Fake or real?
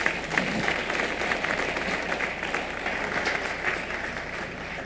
real